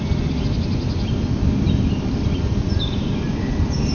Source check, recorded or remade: recorded